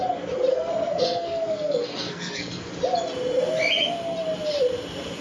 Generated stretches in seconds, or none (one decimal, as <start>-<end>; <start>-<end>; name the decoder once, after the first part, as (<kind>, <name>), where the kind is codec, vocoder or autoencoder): 0.5-2.7 (codec, SNAC)